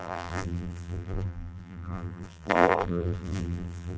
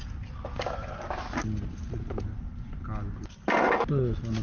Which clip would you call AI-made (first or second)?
first